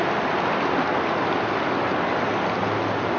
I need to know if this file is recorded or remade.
recorded